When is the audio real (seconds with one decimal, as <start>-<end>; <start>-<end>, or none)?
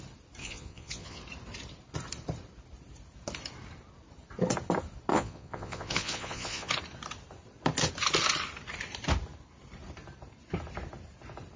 0.0-0.4; 1.2-5.1; 6.7-11.6